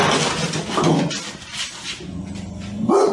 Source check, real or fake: real